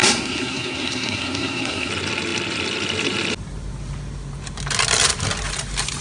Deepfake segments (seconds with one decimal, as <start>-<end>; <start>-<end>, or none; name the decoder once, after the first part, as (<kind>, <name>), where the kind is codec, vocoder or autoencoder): 0.0-1.9 (codec, SNAC)